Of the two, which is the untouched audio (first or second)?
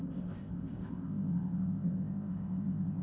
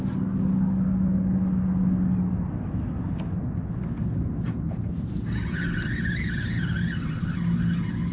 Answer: second